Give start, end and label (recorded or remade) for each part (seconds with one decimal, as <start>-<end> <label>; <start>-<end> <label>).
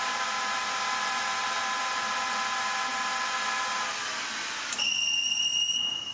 0.0-6.1 recorded